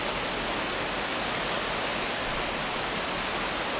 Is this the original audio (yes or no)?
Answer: yes